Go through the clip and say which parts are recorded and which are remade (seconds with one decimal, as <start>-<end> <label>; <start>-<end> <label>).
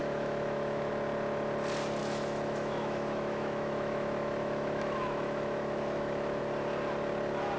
0.0-0.9 remade; 0.9-2.0 recorded; 2.0-6.4 remade; 6.4-7.6 recorded